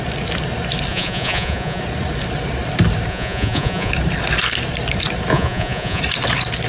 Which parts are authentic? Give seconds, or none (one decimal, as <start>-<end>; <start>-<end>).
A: 0.0-0.9; 1.8-3.1; 3.9-5.3; 6.0-6.7